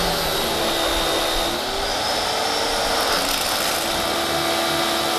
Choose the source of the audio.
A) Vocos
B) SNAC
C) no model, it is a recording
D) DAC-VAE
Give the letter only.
C